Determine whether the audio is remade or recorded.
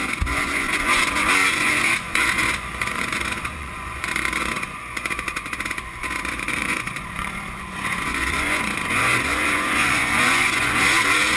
remade